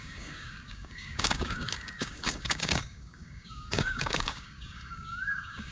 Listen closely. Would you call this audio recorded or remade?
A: remade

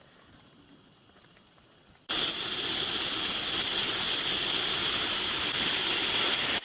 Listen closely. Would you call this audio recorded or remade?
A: recorded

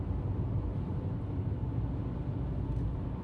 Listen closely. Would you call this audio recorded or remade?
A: recorded